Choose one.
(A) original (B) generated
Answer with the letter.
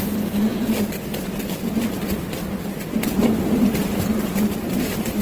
A